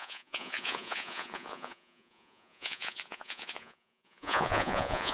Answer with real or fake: fake